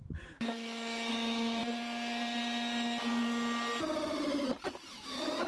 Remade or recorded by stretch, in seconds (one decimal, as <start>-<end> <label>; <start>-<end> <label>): 0.0-1.6 remade; 1.6-4.9 recorded; 4.9-5.5 remade